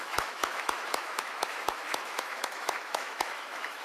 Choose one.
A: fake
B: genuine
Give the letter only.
A